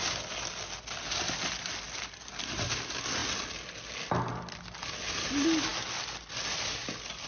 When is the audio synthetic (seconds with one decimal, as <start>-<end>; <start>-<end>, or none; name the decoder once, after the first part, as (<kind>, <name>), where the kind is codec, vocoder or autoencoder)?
none